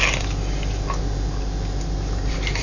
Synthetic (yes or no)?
no